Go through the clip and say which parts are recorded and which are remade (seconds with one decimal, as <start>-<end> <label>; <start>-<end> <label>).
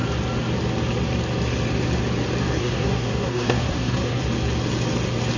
0.0-2.6 recorded; 2.6-4.2 remade; 4.2-5.4 recorded